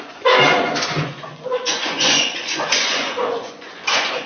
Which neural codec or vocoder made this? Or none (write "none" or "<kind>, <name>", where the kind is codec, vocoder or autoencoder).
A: vocoder, Vocos